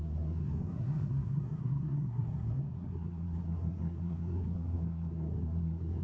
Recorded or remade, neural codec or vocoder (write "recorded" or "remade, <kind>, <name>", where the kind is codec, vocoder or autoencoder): remade, codec, SNAC